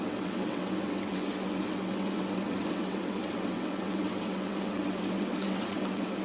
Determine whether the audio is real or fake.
fake